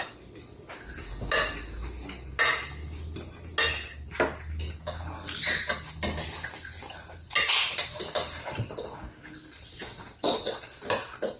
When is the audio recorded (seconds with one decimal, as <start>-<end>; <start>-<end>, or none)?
0.0-9.6; 10.6-11.4